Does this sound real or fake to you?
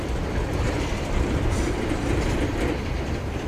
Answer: real